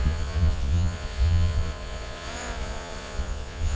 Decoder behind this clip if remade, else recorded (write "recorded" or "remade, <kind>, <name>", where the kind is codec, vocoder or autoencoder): remade, vocoder, Vocos